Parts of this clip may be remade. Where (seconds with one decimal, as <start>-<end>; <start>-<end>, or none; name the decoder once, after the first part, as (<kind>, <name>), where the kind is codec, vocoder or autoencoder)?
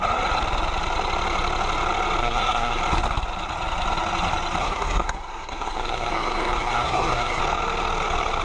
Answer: 2.2-2.8 (codec, SNAC); 4.6-7.4